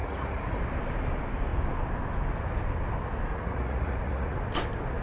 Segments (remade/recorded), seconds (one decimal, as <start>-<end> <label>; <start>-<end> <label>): 0.0-0.6 remade; 0.6-3.3 recorded; 3.3-4.4 remade; 4.4-5.0 recorded